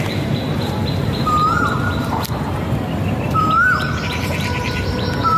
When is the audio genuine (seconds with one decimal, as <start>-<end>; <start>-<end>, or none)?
0.8-3.4